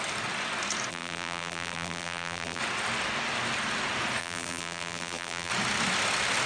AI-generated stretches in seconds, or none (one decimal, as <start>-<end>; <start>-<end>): 0.9-2.6; 4.2-5.5